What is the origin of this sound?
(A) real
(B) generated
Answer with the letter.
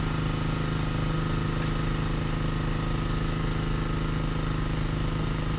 A